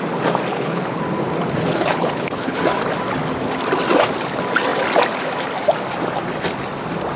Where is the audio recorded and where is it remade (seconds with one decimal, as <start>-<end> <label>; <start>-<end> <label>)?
0.0-0.5 recorded; 0.5-1.0 remade; 1.0-1.7 recorded; 1.7-2.6 remade; 2.6-7.2 recorded

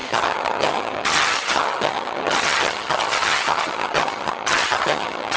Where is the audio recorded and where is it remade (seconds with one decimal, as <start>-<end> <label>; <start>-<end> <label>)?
0.0-5.4 remade

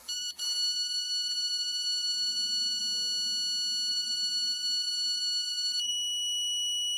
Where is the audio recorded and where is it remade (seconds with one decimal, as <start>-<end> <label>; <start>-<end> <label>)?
0.0-2.8 remade; 2.8-3.9 recorded; 3.9-5.9 remade; 5.9-7.0 recorded